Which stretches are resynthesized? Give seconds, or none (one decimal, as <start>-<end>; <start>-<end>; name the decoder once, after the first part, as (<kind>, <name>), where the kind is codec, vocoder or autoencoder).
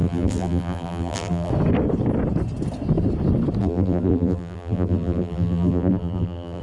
0.0-1.5 (vocoder, BigVGAN v2); 3.6-6.6